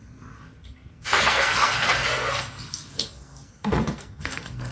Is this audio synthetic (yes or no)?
yes